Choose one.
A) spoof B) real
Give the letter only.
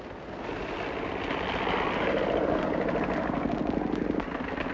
B